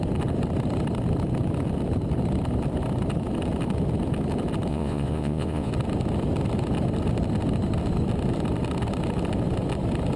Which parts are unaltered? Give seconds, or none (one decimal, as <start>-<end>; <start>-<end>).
0.0-4.7; 5.7-10.2